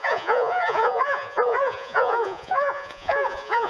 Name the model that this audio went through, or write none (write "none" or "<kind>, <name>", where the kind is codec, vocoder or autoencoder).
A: vocoder, Vocos